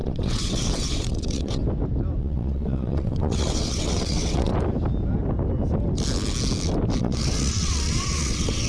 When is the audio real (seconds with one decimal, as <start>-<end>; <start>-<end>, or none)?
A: 1.6-2.2; 4.5-7.0